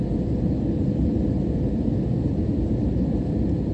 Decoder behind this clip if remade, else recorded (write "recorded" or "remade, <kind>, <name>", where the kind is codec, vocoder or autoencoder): recorded